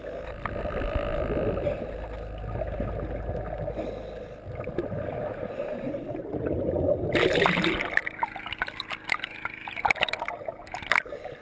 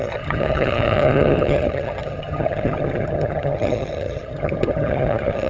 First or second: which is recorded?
first